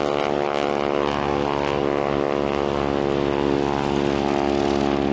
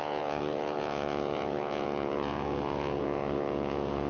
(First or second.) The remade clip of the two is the second